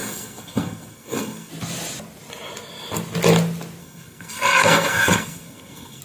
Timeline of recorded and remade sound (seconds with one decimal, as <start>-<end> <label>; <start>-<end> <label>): 0.0-1.5 remade; 1.5-3.8 recorded; 3.8-6.0 remade